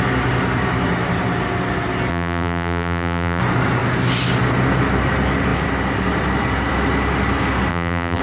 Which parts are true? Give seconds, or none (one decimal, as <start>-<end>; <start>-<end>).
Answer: 0.0-2.1; 3.4-7.7